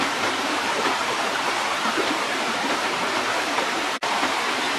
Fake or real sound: fake